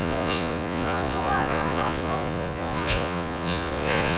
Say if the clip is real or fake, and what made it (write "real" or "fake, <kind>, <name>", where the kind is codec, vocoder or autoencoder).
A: fake, vocoder, Vocos